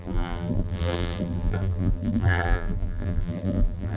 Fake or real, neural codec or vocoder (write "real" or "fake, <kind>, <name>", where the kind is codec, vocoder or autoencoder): fake, vocoder, BigVGAN v2